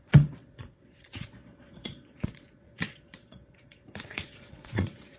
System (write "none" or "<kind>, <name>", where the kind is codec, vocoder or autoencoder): vocoder, Vocos